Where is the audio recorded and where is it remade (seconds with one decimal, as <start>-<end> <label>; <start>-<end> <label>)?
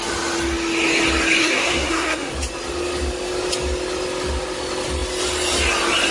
0.0-1.4 recorded; 1.4-2.3 remade; 2.3-6.1 recorded